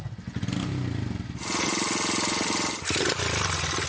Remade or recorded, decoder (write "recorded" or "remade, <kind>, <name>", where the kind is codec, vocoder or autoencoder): recorded